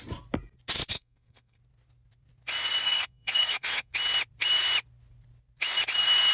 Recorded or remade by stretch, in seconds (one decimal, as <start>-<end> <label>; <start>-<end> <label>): 0.0-0.9 recorded; 0.9-1.6 remade; 1.6-2.8 recorded; 2.8-3.9 remade; 3.9-6.3 recorded